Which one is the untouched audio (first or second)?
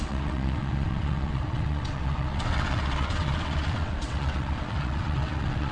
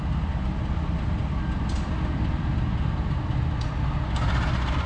second